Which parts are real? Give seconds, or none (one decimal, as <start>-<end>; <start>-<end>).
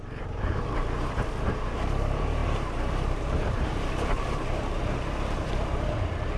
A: none